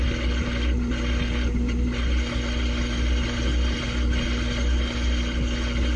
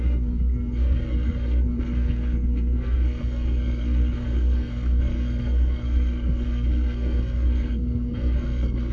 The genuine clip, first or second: first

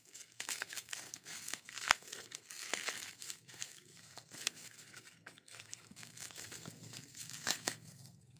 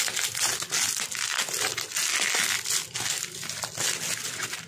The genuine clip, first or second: second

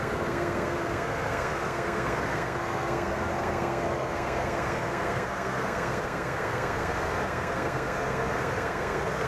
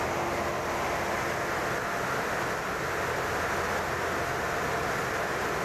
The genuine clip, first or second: second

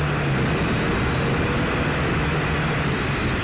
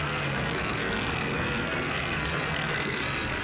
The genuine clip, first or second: first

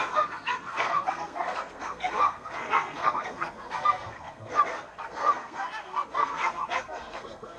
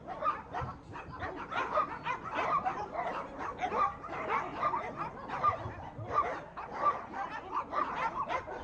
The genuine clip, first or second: second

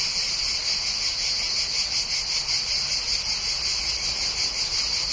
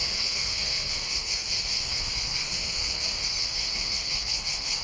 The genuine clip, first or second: first